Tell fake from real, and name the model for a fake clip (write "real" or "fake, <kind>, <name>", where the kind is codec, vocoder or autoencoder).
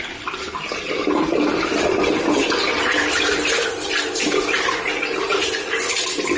real